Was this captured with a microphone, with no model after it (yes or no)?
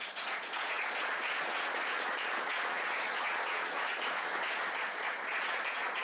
no